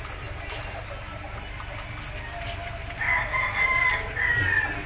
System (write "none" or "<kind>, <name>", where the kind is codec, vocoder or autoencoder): none